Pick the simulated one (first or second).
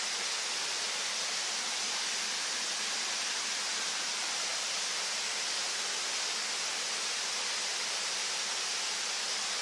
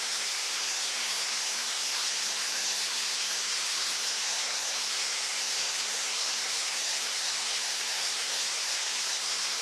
second